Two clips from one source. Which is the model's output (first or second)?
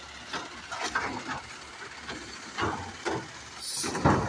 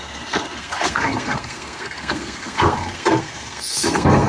second